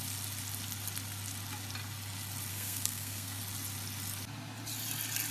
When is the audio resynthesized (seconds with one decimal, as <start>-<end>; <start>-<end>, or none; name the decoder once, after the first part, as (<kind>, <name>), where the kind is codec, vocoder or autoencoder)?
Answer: 2.5-3.4 (codec, SNAC)